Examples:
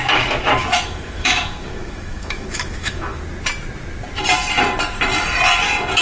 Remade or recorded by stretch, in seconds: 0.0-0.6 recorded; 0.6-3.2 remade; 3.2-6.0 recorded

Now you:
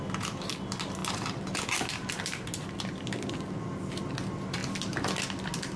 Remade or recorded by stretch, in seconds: 0.0-5.8 recorded

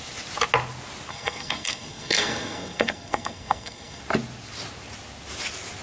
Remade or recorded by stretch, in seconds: 0.0-1.1 recorded; 1.1-4.0 remade; 4.0-5.8 recorded

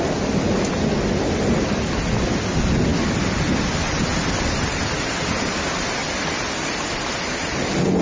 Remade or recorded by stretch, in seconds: 0.0-6.0 recorded; 6.0-7.5 remade; 7.5-8.0 recorded

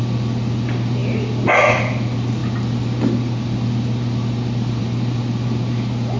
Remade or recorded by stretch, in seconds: 0.0-1.0 remade; 1.0-1.7 recorded; 1.7-2.4 remade; 2.4-4.8 recorded; 4.8-6.2 remade

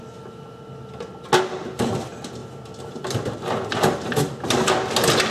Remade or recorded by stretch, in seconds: 0.0-5.3 recorded